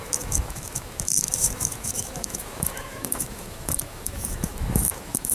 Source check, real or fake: fake